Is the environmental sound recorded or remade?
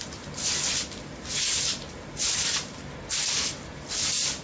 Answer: recorded